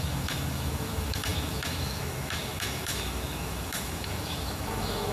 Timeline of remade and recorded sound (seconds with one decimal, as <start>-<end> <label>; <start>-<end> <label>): 0.0-5.1 remade